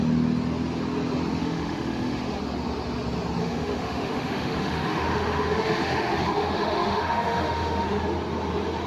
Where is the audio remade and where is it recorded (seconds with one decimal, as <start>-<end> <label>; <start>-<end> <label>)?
0.0-1.4 recorded; 1.4-2.4 remade; 2.4-3.4 recorded; 3.4-8.0 remade; 8.0-8.9 recorded